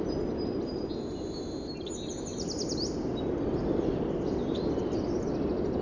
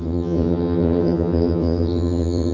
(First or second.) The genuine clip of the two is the first